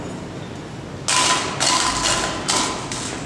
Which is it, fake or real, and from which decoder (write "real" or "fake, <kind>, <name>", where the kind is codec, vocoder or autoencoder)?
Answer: real